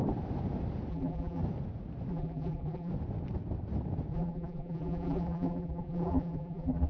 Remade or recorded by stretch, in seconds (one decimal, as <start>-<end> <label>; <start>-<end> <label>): 0.0-0.9 recorded; 0.9-1.4 remade; 1.4-2.1 recorded; 2.1-2.9 remade; 2.9-4.1 recorded; 4.1-6.9 remade